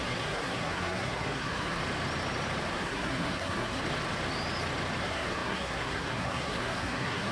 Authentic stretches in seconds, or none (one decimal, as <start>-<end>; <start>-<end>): 1.8-2.7; 3.8-5.0